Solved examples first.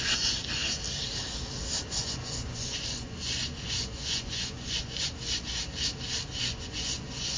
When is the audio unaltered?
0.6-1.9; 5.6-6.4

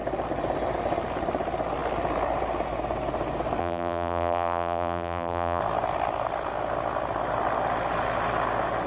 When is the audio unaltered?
0.0-3.6; 5.6-8.9

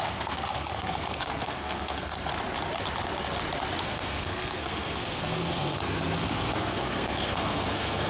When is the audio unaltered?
2.3-3.8

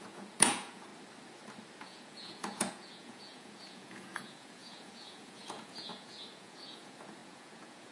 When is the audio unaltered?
0.9-1.8

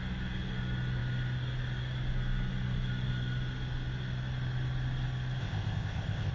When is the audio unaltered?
0.0-5.4

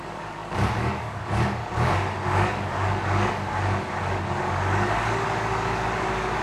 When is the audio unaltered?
none

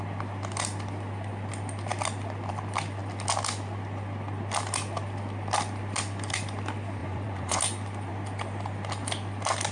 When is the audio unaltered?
0.0-7.0; 7.6-9.7